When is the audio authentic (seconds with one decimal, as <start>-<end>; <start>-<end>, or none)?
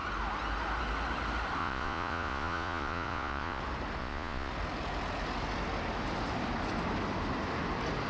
0.0-1.6; 3.6-4.0; 4.5-8.1